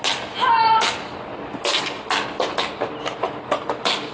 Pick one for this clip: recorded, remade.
recorded